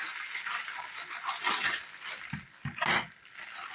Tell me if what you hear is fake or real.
real